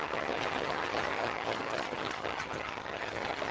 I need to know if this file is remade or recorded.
remade